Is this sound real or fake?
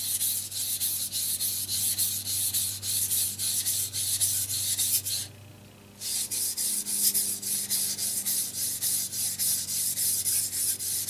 real